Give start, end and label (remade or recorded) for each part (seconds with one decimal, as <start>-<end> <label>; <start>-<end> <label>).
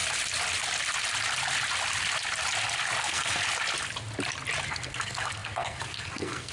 0.0-3.0 recorded; 3.0-3.4 remade; 3.4-4.7 recorded; 4.7-6.5 remade